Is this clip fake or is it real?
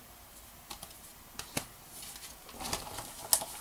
real